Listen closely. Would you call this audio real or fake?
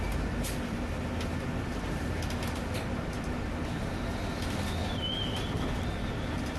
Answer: real